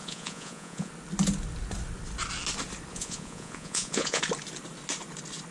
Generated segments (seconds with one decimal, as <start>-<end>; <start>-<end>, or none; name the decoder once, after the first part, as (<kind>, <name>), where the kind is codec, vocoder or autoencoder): 0.0-0.9 (vocoder, Vocos); 2.9-4.2